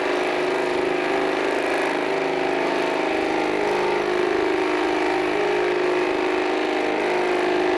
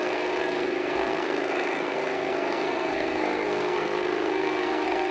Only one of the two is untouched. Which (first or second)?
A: first